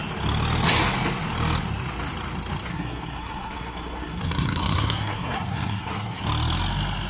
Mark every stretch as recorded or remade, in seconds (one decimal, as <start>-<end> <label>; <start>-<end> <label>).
0.0-2.7 recorded; 2.7-6.2 remade; 6.2-7.1 recorded